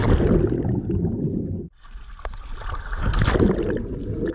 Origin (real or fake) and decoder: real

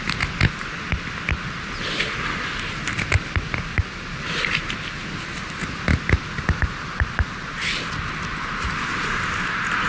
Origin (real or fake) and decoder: real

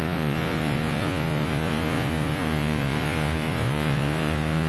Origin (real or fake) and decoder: fake, vocoder, Vocos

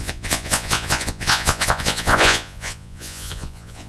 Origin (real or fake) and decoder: fake, vocoder, Vocos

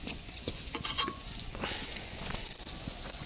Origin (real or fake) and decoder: fake, vocoder, Vocos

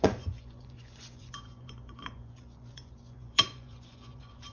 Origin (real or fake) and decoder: fake, vocoder, Vocos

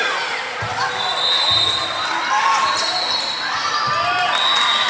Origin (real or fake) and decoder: real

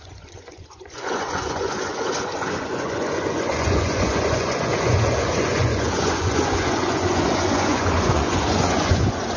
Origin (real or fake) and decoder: fake, vocoder, Vocos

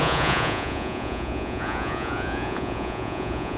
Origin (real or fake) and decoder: fake, vocoder, Vocos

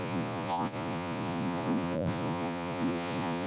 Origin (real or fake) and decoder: fake, vocoder, Vocos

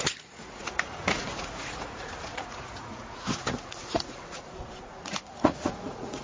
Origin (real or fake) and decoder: fake, vocoder, Vocos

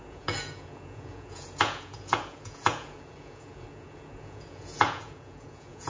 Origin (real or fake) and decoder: fake, vocoder, Vocos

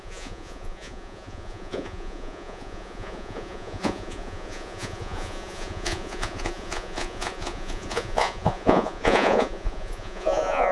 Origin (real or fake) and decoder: fake, vocoder, Vocos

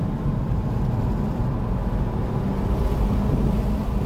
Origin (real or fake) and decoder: real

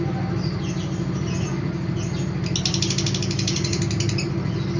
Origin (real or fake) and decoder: real